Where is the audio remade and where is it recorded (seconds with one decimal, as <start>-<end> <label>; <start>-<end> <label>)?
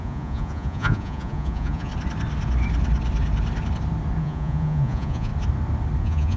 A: 0.0-1.9 remade; 1.9-4.2 recorded; 4.2-5.3 remade; 5.3-6.0 recorded; 6.0-6.4 remade